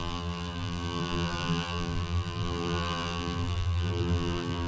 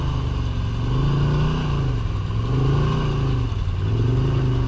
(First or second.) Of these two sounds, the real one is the second